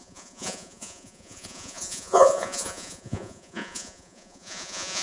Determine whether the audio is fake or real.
fake